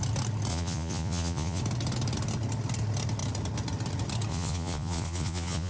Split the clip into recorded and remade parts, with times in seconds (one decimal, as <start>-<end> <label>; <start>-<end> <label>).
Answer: 0.0-0.5 recorded; 0.5-1.6 remade; 1.6-4.3 recorded; 4.3-5.7 remade

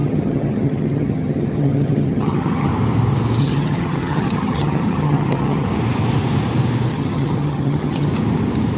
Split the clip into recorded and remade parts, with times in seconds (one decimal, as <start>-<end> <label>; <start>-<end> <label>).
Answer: 0.0-2.7 remade; 2.7-3.4 recorded; 3.4-5.7 remade; 5.7-6.9 recorded; 6.9-8.1 remade; 8.1-8.8 recorded

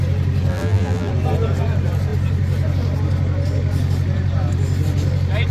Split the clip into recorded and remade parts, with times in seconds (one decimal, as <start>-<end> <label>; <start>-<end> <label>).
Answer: 0.0-0.5 recorded; 0.5-1.1 remade; 1.1-5.5 recorded

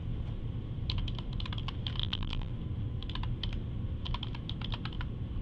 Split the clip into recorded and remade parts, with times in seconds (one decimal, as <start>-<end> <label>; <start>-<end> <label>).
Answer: 0.0-2.0 recorded; 2.0-2.5 remade; 2.5-5.4 recorded

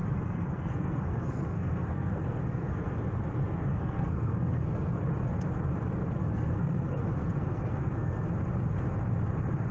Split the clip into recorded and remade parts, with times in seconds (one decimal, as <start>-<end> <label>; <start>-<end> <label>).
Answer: 0.0-3.0 remade; 3.0-3.7 recorded; 3.7-5.0 remade; 5.0-6.2 recorded; 6.2-8.3 remade; 8.3-9.7 recorded